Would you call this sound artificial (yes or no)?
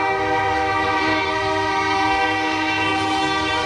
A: yes